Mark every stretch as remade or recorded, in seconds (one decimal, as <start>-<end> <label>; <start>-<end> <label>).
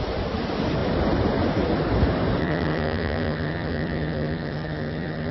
0.0-2.4 recorded; 2.4-5.3 remade